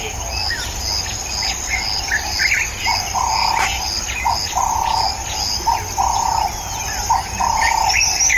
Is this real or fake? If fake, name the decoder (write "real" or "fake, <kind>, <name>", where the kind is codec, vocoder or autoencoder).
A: real